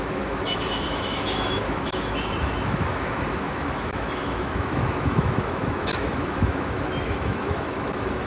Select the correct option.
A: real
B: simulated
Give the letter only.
B